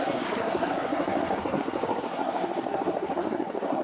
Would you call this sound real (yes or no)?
no